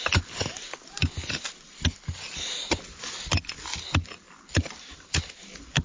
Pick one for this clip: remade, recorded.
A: recorded